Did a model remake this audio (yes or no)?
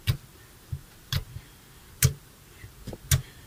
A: no